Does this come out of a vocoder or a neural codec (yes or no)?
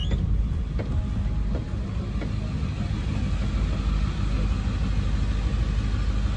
no